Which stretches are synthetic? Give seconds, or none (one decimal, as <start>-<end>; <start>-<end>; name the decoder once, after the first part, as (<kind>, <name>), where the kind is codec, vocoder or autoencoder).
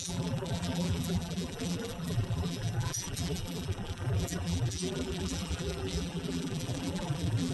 0.0-7.5 (vocoder, BigVGAN v2)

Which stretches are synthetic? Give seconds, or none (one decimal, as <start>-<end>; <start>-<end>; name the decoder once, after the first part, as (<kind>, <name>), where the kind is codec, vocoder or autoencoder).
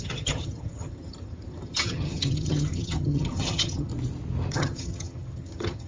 0.0-3.9 (vocoder, HiFi-GAN); 4.5-5.9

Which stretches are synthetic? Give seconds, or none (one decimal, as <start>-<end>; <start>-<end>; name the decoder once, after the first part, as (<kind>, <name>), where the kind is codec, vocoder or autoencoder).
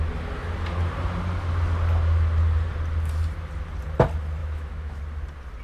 4.4-5.0 (autoencoder, DAC-VAE)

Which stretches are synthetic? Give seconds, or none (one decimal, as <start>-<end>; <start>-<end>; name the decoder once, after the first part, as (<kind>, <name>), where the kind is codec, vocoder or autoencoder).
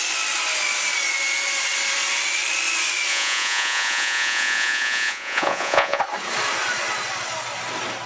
3.1-6.0 (vocoder, Vocos)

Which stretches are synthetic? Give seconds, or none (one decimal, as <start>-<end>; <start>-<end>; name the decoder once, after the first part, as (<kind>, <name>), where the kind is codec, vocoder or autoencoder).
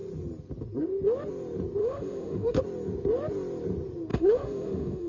1.8-2.6 (autoencoder, DAC-VAE); 4.1-5.1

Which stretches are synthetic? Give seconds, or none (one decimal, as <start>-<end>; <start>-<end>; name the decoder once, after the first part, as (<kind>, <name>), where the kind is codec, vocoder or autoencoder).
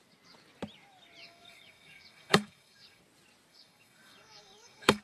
1.2-3.0 (codec, DAC); 3.5-5.0